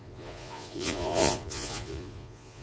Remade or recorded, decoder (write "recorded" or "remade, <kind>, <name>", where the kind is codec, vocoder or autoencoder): remade, vocoder, Vocos